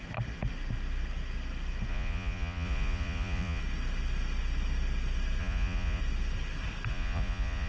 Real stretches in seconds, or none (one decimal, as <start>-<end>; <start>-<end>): 0.0-1.9; 3.6-5.4; 6.0-6.9